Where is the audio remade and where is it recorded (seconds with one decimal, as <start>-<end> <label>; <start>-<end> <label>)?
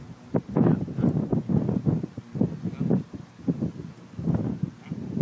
0.0-1.3 remade; 1.3-4.4 recorded; 4.4-5.2 remade